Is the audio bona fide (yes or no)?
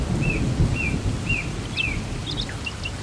yes